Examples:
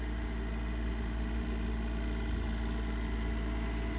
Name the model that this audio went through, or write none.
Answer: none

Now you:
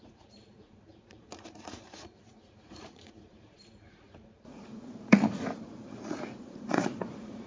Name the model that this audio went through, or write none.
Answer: vocoder, Vocos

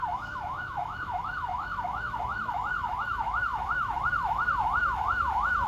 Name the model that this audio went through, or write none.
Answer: autoencoder, DAC-VAE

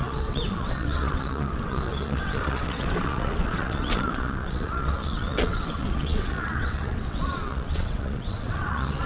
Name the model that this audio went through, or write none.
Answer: vocoder, WaveNeXt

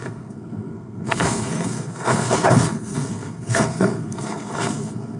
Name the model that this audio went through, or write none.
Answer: codec, SNAC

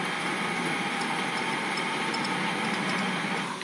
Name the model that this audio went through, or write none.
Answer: none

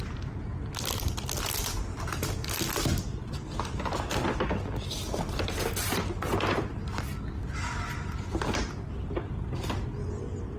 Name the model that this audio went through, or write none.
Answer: none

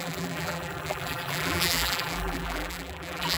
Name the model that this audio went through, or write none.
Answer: vocoder, BigVGAN v2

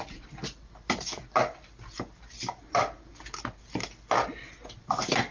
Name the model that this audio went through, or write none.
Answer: none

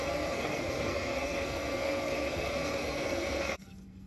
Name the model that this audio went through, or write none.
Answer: codec, SNAC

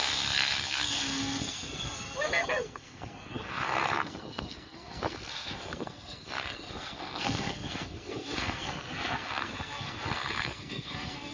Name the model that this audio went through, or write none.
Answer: codec, SNAC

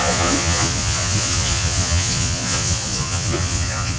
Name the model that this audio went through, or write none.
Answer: vocoder, Vocos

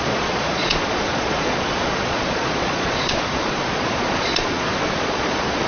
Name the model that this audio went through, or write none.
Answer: vocoder, Vocos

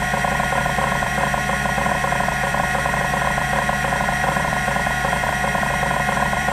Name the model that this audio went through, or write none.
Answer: vocoder, BigVGAN v2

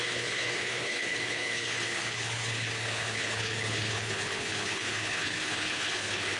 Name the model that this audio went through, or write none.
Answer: codec, HILCodec